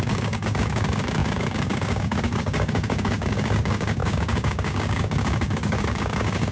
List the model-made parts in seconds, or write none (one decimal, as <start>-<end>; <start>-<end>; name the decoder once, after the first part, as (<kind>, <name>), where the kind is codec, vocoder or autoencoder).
0.0-6.5 (codec, DAC)

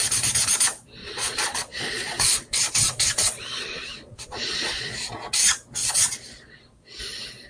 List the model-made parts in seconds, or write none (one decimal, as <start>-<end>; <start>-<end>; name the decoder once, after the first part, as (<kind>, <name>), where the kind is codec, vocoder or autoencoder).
1.0-5.1 (vocoder, Vocos); 5.8-7.0

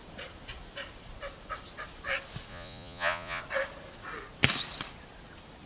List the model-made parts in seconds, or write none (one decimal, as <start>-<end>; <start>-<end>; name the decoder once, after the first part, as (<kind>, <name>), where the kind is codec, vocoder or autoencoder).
2.5-3.4 (vocoder, Vocos)

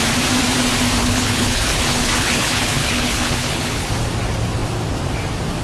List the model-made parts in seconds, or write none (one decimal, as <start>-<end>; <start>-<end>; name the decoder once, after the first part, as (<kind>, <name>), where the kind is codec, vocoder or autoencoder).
1.0-3.9 (codec, HILCodec)

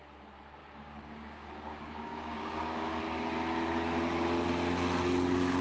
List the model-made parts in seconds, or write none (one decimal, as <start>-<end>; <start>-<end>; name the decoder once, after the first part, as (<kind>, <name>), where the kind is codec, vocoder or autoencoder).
0.6-3.0 (codec, DAC)